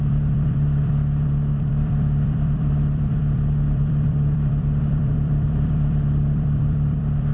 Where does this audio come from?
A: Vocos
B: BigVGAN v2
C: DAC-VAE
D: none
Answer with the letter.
B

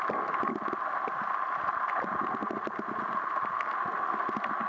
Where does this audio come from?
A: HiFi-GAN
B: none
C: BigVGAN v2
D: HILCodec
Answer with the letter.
B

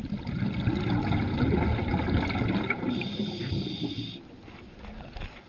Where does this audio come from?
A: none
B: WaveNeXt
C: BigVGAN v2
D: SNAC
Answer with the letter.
A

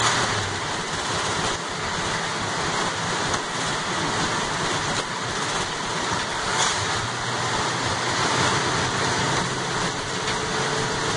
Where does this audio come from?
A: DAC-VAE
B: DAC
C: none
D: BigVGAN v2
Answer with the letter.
C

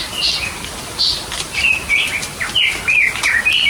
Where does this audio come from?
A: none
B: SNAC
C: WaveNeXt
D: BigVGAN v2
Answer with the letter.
D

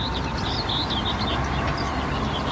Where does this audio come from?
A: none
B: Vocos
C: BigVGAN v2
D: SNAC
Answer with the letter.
A